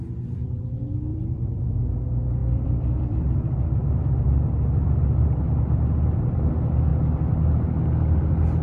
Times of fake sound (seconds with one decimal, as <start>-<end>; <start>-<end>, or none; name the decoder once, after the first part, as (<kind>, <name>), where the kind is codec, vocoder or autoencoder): 1.1-1.8 (vocoder, BigVGAN v2); 2.4-6.5

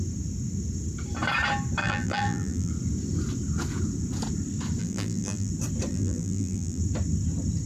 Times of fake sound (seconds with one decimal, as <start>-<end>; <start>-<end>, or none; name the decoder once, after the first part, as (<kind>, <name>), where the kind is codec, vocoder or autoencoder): 1.8-2.7 (vocoder, BigVGAN v2); 4.8-5.5; 5.9-6.8

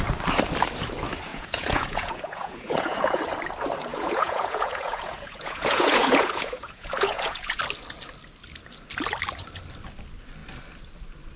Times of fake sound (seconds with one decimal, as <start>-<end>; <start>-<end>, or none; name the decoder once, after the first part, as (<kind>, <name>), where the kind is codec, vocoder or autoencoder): 1.3-3.2 (vocoder, Vocos); 3.9-7.6

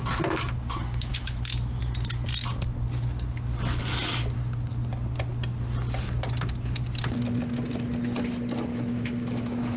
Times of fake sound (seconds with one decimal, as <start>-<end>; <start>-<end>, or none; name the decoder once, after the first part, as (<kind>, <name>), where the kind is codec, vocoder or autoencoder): 1.1-1.8 (autoencoder, DAC-VAE); 8.7-9.8